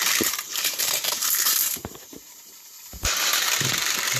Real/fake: fake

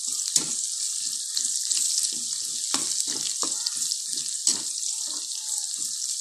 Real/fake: real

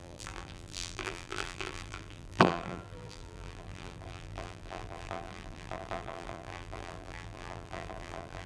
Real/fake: fake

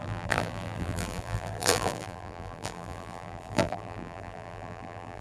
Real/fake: fake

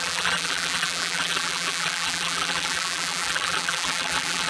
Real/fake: fake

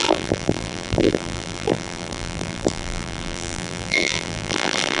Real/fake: fake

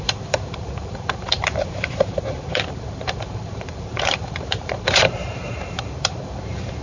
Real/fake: fake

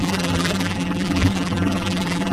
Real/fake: fake